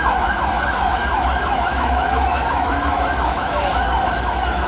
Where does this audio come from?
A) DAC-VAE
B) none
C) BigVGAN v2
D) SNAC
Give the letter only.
A